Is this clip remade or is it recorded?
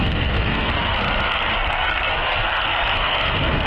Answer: remade